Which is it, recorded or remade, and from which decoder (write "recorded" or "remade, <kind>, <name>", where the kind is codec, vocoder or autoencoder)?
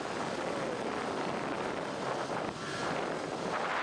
recorded